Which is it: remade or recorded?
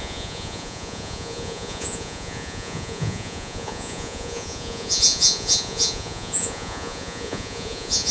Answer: remade